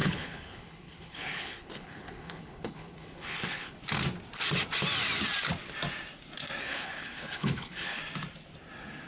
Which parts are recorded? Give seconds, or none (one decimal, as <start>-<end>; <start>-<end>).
3.8-6.6; 8.0-9.1